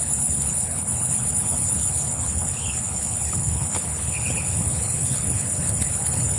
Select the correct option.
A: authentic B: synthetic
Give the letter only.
B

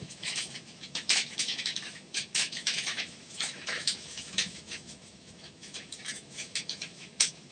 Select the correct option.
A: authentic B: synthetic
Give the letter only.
B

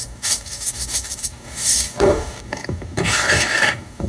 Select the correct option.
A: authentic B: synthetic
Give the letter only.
B